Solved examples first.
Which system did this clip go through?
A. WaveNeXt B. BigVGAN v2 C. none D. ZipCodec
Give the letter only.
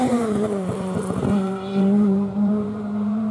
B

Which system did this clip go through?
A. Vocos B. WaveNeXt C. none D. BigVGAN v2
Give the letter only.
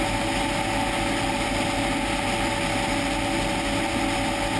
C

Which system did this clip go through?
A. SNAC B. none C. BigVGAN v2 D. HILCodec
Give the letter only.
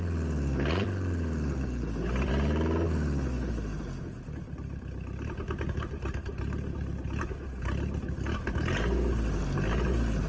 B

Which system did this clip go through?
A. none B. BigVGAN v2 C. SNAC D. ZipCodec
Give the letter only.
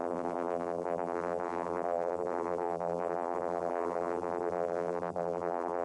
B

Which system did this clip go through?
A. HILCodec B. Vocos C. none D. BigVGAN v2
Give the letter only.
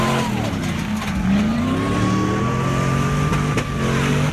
C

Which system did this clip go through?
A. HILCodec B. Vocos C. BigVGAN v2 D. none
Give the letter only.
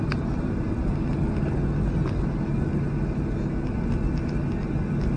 D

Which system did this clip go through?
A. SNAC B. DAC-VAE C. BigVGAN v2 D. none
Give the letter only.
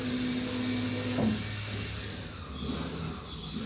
D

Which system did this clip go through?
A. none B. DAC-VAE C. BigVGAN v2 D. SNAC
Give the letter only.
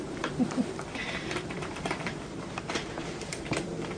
C